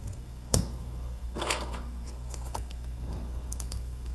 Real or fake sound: fake